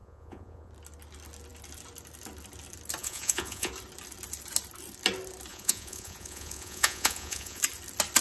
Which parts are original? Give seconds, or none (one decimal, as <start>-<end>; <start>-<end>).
0.7-3.0; 3.7-5.5; 7.6-8.2